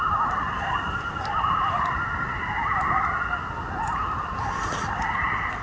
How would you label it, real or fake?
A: real